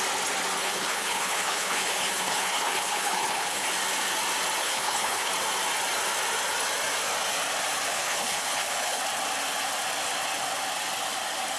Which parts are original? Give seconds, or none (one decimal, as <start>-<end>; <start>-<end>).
0.0-0.6; 3.7-4.6; 5.3-7.9; 9.0-11.6